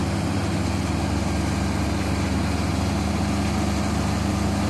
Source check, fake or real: real